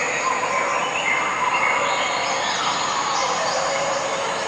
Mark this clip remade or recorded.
recorded